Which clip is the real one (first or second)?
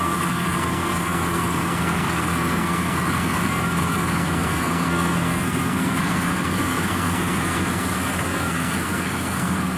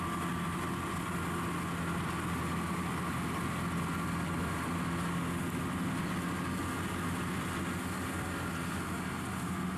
second